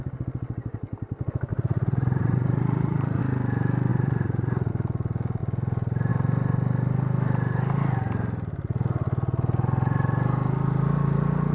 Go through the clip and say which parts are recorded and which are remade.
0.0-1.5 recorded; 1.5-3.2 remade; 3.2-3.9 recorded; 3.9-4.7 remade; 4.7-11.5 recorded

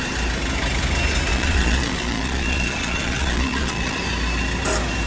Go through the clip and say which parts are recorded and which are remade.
0.0-1.3 recorded; 1.3-4.0 remade; 4.0-5.1 recorded

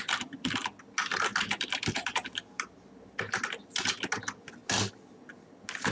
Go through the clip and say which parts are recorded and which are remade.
0.0-5.9 recorded

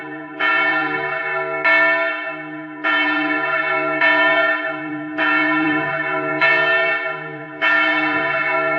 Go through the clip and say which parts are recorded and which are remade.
0.0-1.3 remade; 1.3-2.1 recorded; 2.1-8.8 remade

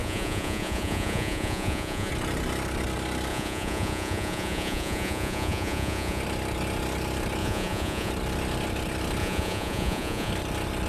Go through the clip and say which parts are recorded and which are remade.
0.0-2.1 remade; 2.1-3.3 recorded; 3.3-6.2 remade; 6.2-7.4 recorded; 7.4-8.1 remade; 8.1-9.2 recorded; 9.2-10.3 remade; 10.3-10.9 recorded

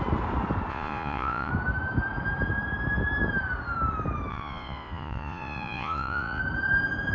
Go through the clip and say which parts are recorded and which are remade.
0.0-0.7 recorded; 0.7-1.5 remade; 1.5-4.3 recorded; 4.3-6.4 remade; 6.4-7.1 recorded

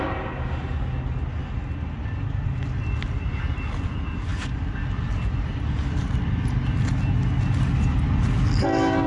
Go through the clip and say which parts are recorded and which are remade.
0.0-9.1 recorded

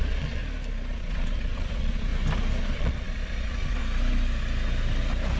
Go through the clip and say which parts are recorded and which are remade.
0.0-0.4 remade; 0.4-0.9 recorded; 0.9-2.1 remade; 2.1-2.6 recorded; 2.6-3.8 remade; 3.8-5.4 recorded